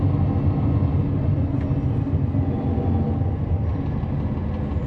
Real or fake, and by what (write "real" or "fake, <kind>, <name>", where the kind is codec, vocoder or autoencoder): real